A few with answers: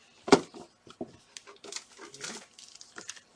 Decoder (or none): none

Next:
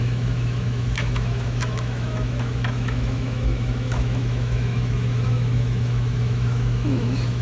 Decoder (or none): autoencoder, DAC-VAE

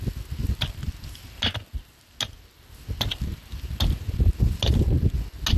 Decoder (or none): none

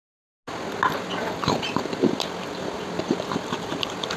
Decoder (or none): none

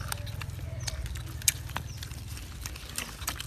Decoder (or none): none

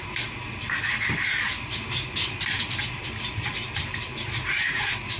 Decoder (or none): none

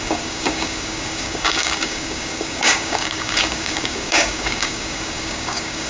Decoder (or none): codec, DAC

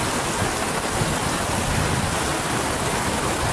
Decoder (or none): none